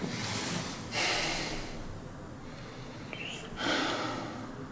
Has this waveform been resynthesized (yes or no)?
no